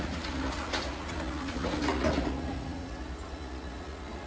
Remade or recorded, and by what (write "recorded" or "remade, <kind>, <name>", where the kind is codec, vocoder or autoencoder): remade, vocoder, Vocos